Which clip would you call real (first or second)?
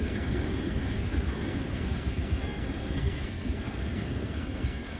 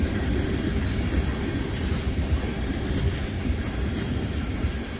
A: second